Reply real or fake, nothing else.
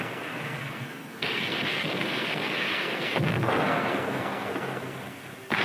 fake